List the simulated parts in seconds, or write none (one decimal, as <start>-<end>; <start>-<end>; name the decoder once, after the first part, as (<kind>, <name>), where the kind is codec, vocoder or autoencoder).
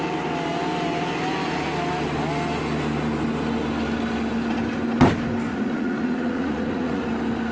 5.5-7.0 (vocoder, Vocos)